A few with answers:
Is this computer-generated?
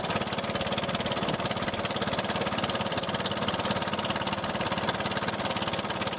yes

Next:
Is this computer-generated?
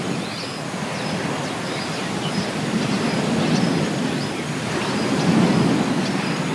no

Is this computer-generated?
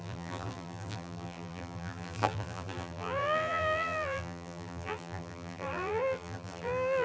yes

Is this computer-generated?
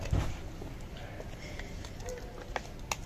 no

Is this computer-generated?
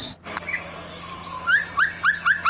no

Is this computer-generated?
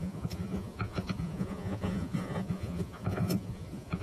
yes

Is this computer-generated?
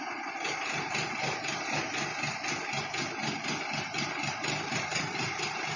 yes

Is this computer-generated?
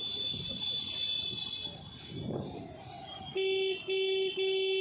no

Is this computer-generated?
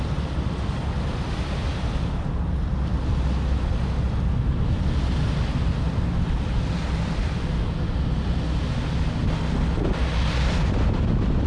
no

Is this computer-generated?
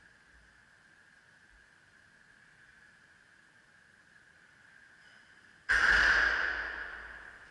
no